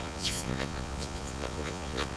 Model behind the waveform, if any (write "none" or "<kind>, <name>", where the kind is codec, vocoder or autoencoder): vocoder, Vocos